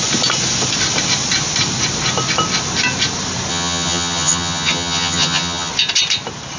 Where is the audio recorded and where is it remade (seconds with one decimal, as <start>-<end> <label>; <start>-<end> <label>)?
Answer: 0.0-3.5 recorded; 3.5-5.7 remade; 5.7-6.6 recorded